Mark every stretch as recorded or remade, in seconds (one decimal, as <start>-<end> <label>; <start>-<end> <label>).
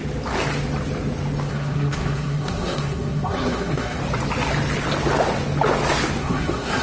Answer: 0.0-1.5 recorded; 1.5-4.0 remade; 4.0-6.2 recorded; 6.2-6.8 remade